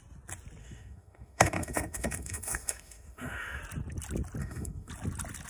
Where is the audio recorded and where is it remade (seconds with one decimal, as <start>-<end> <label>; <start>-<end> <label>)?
0.0-0.6 recorded; 0.6-3.6 remade; 3.6-4.4 recorded; 4.4-4.9 remade; 4.9-5.5 recorded